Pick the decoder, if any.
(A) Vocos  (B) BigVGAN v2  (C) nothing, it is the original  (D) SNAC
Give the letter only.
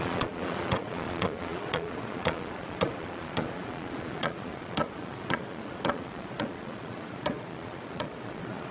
A